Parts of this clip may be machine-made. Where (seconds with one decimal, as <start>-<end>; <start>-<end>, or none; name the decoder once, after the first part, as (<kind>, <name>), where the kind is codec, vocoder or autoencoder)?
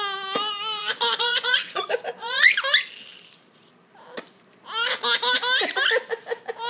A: 0.8-2.5 (vocoder, Vocos)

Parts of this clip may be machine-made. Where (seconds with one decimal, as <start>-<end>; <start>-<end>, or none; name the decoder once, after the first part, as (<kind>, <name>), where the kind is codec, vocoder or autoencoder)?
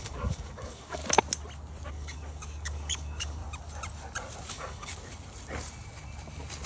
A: 0.0-1.0 (codec, DAC); 1.9-3.4; 4.5-4.9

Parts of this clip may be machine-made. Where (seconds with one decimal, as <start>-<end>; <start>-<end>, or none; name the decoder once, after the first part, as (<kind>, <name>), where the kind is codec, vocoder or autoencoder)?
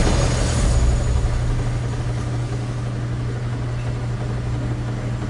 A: none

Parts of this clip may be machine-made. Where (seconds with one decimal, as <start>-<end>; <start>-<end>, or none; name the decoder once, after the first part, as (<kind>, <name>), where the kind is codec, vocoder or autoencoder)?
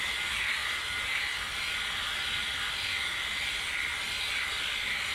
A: 0.0-0.6 (vocoder, BigVGAN v2); 2.4-3.9; 4.5-5.1